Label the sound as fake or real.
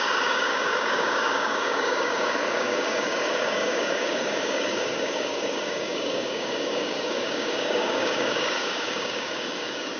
fake